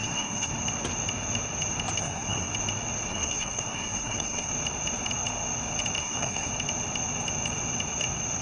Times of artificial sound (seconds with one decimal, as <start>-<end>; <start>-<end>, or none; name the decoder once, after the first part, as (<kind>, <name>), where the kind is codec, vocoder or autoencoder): 0.0-0.5 (codec, SNAC); 2.0-2.5; 3.1-4.5; 6.0-6.5